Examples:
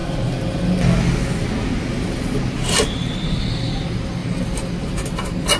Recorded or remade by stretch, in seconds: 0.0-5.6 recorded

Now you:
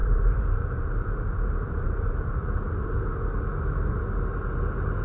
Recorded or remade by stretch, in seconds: 0.0-3.0 remade; 3.0-5.0 recorded

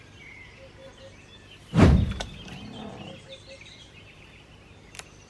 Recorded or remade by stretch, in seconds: 0.0-5.3 remade